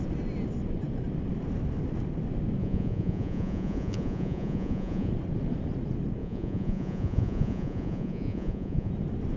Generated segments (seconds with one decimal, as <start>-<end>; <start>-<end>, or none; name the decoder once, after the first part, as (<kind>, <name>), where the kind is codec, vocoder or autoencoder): 2.6-5.1 (vocoder, Vocos); 6.2-8.9